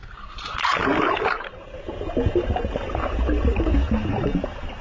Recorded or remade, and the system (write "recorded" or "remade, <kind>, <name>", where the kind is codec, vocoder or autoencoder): remade, vocoder, BigVGAN v2